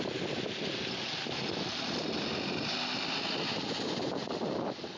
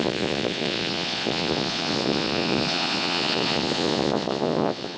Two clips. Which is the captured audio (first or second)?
first